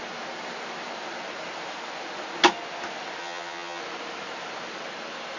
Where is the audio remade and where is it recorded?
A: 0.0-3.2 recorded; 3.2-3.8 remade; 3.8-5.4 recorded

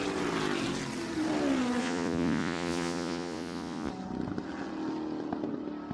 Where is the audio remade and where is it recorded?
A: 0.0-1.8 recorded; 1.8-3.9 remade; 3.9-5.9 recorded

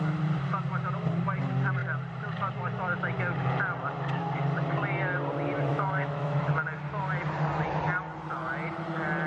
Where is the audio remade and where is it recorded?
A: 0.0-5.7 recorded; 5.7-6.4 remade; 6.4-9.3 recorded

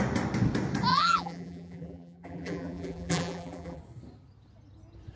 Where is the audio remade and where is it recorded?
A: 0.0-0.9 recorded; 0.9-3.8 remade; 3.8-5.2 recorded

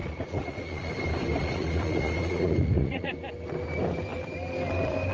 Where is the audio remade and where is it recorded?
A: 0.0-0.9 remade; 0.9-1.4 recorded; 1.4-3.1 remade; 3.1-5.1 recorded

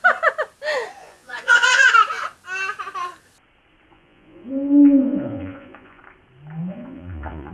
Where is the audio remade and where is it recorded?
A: 0.0-1.0 recorded; 1.0-1.9 remade; 1.9-3.9 recorded; 3.9-6.0 remade; 6.0-6.6 recorded; 6.6-7.5 remade

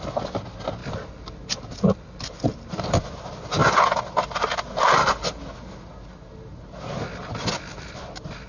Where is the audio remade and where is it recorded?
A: 0.0-8.5 recorded